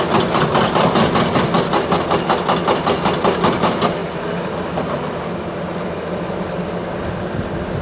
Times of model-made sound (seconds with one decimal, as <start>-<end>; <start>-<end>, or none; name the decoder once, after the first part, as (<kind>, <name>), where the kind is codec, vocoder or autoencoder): none